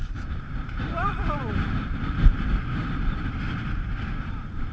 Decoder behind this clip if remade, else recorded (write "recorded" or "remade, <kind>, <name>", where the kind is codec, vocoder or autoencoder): remade, vocoder, BigVGAN v2